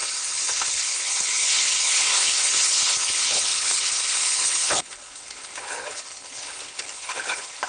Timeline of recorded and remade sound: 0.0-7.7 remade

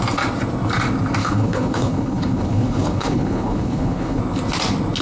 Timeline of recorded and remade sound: 0.0-1.2 recorded; 1.2-4.2 remade; 4.2-5.0 recorded

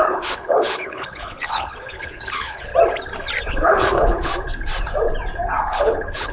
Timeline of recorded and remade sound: 0.0-2.7 remade; 2.7-3.5 recorded; 3.5-4.3 remade; 4.3-5.6 recorded; 5.6-6.3 remade

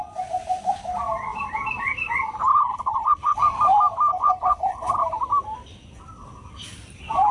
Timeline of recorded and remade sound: 0.0-2.5 recorded; 2.5-3.4 remade; 3.4-4.1 recorded; 4.1-5.0 remade; 5.0-7.3 recorded